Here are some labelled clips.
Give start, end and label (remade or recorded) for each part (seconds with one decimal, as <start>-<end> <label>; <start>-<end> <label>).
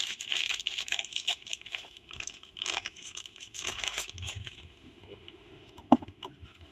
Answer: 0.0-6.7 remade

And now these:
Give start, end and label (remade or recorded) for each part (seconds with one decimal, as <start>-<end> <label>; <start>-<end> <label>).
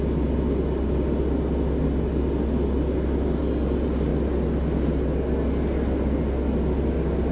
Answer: 0.0-7.3 recorded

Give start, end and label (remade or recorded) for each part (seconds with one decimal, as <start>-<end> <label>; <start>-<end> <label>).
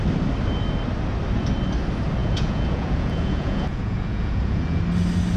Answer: 0.0-2.2 recorded; 2.2-4.8 remade; 4.8-5.4 recorded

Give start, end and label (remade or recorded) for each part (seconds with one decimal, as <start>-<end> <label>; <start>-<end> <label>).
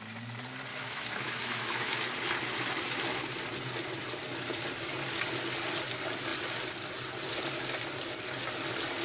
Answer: 0.0-0.7 recorded; 0.7-2.0 remade; 2.0-9.0 recorded